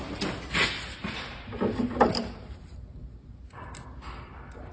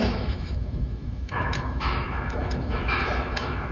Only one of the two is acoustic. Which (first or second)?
first